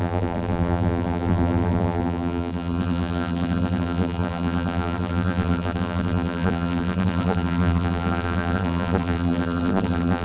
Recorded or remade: remade